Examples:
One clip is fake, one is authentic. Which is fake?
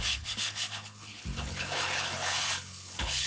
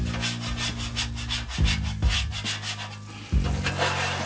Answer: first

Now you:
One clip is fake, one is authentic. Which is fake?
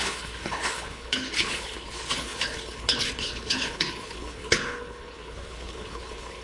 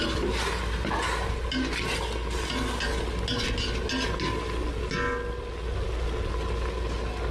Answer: first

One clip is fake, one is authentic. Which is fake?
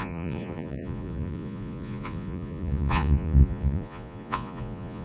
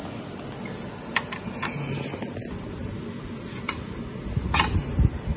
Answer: first